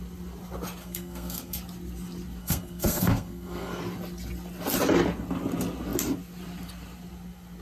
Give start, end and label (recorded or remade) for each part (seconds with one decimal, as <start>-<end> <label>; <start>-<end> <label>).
0.0-0.8 recorded; 0.8-1.6 remade; 1.6-2.4 recorded; 2.4-3.8 remade; 3.8-7.6 recorded